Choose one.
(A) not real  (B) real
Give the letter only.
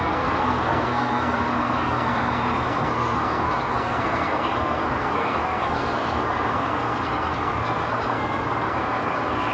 A